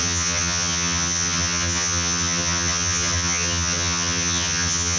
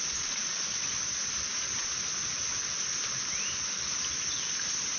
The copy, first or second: first